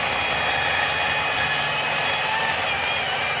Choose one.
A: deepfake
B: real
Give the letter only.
B